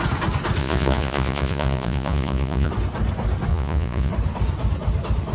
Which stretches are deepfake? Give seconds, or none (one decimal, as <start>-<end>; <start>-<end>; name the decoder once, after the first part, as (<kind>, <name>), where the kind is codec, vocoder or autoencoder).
0.6-2.7 (vocoder, Vocos); 3.5-4.1